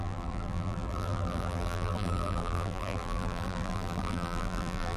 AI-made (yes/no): yes